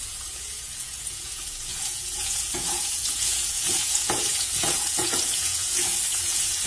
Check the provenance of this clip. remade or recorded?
remade